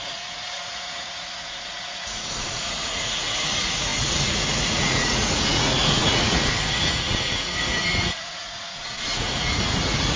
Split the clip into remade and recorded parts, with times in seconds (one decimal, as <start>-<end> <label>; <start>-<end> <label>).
0.0-10.2 remade